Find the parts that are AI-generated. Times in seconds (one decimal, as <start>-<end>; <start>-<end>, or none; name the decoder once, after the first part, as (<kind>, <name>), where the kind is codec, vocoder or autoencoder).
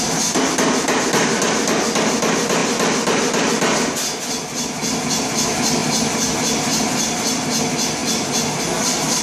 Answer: none